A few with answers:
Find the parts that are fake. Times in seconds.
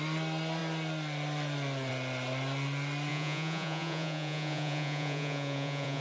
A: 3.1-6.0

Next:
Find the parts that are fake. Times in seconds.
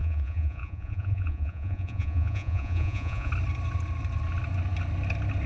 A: 0.0-3.3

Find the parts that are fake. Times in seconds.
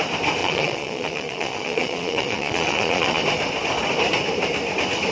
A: 0.4-3.2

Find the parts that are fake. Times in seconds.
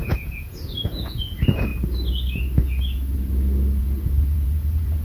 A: 0.0-1.7; 3.8-5.0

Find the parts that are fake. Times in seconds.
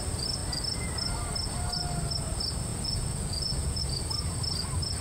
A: 2.7-3.8